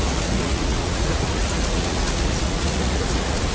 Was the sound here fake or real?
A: fake